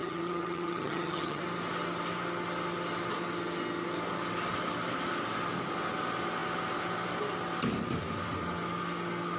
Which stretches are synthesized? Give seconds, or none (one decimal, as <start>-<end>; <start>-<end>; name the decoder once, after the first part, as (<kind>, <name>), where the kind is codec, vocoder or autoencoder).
0.0-1.4 (vocoder, HiFi-GAN)